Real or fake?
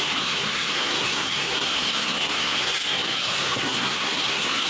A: fake